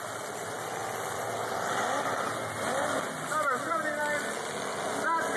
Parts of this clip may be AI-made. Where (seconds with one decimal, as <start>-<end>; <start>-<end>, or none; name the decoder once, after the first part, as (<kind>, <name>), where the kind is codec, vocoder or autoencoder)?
none